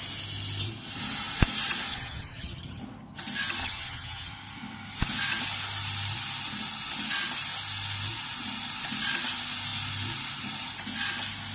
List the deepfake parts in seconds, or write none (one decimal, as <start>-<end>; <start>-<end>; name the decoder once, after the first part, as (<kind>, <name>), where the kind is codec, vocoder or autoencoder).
1.9-2.8 (vocoder, HiFi-GAN); 3.6-4.3